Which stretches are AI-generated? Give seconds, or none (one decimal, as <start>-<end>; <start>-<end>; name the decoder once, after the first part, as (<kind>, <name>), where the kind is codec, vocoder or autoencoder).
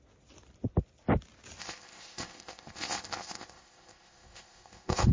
1.6-5.1 (codec, ZipCodec)